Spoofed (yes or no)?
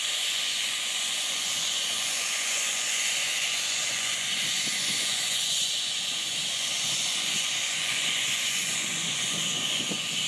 yes